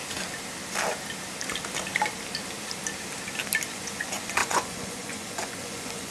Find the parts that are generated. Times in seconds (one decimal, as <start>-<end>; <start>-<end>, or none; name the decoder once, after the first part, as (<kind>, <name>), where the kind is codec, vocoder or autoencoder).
3.7-6.1 (vocoder, Vocos)